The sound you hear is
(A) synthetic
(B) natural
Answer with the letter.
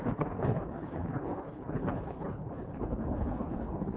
A